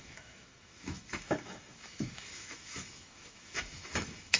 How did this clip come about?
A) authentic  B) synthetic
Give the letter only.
B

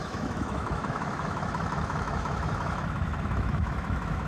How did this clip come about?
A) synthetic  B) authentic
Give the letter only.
A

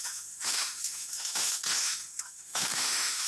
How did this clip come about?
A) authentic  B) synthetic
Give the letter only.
B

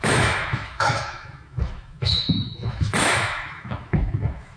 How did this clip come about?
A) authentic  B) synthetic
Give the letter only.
B